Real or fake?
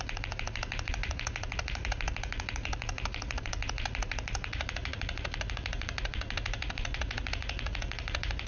fake